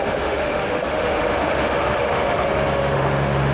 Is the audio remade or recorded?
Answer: remade